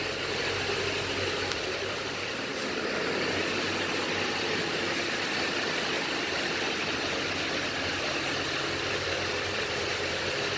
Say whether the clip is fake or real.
real